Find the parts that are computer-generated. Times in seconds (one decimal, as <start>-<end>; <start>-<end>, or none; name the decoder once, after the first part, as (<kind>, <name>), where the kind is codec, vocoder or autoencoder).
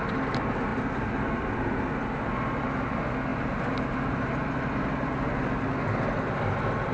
none